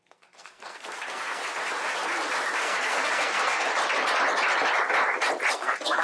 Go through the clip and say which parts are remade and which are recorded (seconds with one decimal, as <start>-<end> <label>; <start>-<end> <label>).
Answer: 0.0-1.4 remade; 1.4-2.6 recorded; 2.6-3.7 remade; 3.7-5.5 recorded; 5.5-6.0 remade